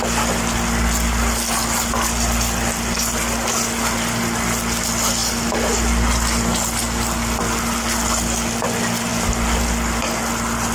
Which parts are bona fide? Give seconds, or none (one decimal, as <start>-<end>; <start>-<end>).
0.0-10.7